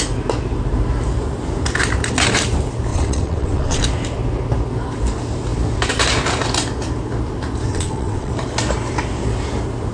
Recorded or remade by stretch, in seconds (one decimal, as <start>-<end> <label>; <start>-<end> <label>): 0.0-2.9 recorded; 2.9-3.8 remade; 3.8-7.7 recorded; 7.7-8.3 remade; 8.3-9.9 recorded